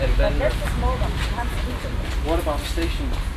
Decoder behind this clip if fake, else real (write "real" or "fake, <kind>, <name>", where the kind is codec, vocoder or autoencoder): real